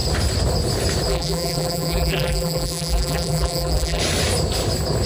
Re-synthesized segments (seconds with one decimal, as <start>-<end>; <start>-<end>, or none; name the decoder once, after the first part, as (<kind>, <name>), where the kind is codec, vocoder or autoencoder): 1.1-4.0 (vocoder, BigVGAN v2)